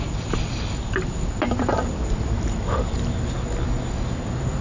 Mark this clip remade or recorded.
recorded